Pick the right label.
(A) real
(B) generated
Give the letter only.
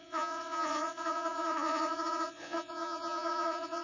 B